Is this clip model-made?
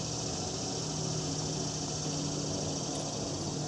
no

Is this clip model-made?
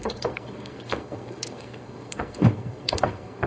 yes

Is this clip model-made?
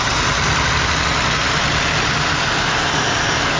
no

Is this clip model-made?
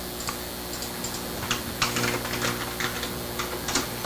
no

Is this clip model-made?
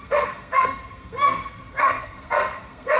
yes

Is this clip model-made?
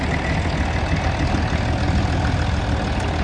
no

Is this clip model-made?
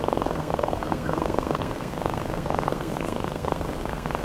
yes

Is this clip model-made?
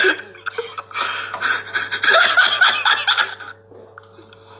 no